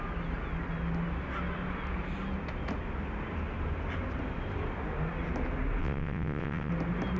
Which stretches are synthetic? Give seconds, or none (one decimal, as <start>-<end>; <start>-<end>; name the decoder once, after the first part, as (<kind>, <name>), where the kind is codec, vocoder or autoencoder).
5.8-6.7 (vocoder, WaveNeXt)